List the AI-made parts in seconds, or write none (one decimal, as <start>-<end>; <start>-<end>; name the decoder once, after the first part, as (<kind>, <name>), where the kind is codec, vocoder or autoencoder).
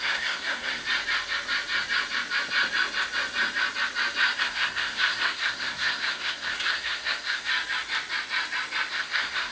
0.0-0.8 (codec, SNAC); 4.4-7.5; 8.9-9.5